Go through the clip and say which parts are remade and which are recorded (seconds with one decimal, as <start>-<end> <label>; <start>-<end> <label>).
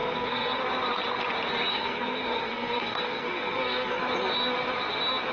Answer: 0.0-0.6 remade; 0.6-1.7 recorded; 1.7-4.0 remade; 4.0-5.3 recorded